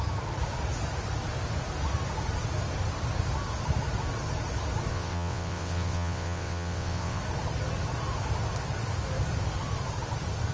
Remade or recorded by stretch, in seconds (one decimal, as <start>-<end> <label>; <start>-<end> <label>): 0.0-4.9 recorded; 4.9-7.2 remade; 7.2-10.5 recorded